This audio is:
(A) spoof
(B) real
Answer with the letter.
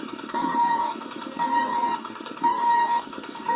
A